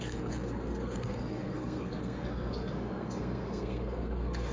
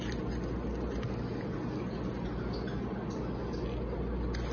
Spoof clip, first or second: first